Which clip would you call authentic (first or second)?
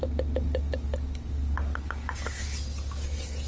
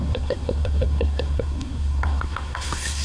first